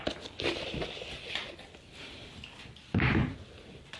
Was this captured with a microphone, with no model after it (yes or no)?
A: yes